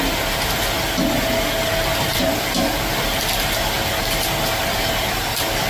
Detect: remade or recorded recorded